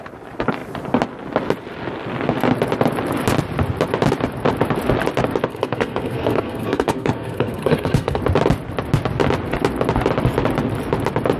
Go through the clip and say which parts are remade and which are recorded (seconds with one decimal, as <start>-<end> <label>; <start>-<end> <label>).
0.0-5.5 recorded; 5.5-8.2 remade; 8.2-11.4 recorded